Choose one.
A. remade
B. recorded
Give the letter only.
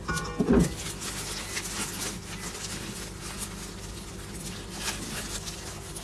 B